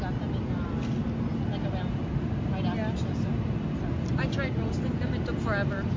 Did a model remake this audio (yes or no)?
no